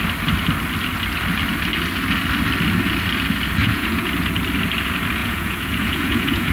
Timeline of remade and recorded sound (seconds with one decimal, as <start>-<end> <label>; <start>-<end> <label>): 0.0-3.6 recorded; 3.6-4.1 remade; 4.1-5.2 recorded; 5.2-6.5 remade